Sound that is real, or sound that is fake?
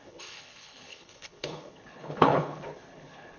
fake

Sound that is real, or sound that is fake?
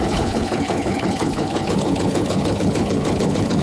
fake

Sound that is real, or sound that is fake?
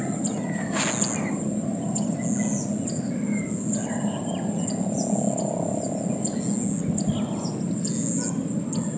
real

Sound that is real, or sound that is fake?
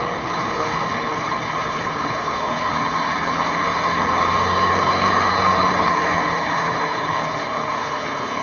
fake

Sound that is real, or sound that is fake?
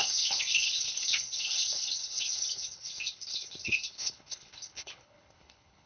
fake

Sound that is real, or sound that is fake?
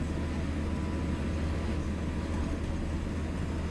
real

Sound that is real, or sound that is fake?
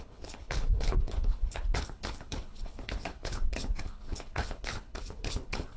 fake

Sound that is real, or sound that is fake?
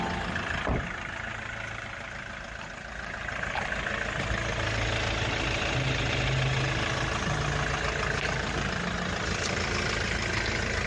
real